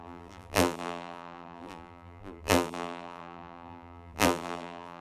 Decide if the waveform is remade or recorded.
remade